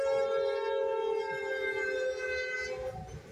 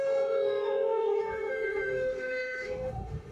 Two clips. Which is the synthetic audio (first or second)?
second